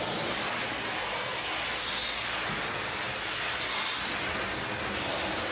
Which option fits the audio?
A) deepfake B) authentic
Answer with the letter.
B